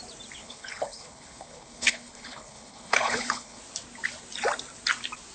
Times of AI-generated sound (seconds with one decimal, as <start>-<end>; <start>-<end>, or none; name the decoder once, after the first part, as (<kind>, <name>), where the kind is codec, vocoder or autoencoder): 0.4-3.6 (codec, HILCodec)